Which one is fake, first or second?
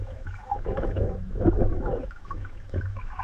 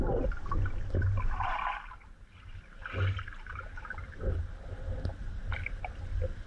first